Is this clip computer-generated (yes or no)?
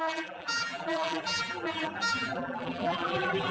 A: yes